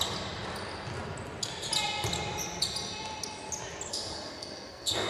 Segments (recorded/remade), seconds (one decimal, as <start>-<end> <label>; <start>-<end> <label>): 0.0-3.9 recorded; 3.9-5.1 remade